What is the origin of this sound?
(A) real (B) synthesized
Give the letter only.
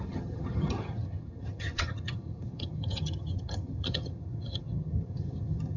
B